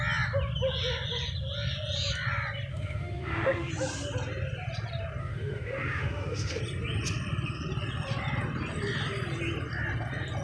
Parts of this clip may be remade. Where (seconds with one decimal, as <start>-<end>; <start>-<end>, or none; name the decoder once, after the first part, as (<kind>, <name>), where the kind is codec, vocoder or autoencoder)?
2.7-3.7 (autoencoder, DAC-VAE); 5.2-6.6